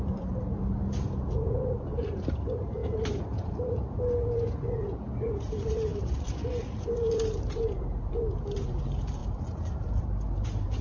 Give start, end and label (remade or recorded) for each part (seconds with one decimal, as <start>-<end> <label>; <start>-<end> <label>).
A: 0.0-10.8 remade